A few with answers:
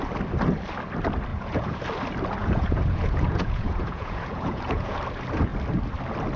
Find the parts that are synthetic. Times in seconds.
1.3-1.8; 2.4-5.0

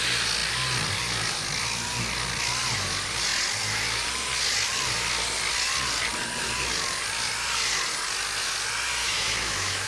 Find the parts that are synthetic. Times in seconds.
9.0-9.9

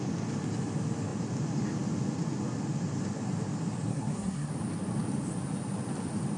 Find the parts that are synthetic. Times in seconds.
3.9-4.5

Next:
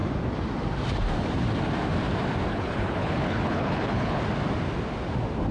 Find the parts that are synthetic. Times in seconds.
2.5-4.2

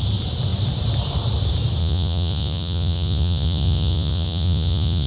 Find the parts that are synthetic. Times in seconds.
1.8-5.1

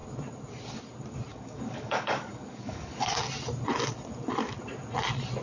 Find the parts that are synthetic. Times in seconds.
1.3-3.2

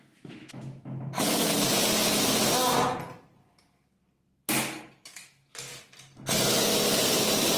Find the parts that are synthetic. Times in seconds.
0.0-1.5; 5.1-5.7

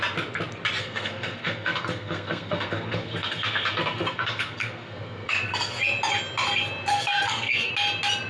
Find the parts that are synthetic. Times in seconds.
0.8-5.8; 6.9-7.7